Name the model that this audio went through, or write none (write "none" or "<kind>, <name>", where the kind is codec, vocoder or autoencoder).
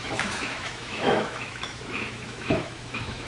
autoencoder, DAC-VAE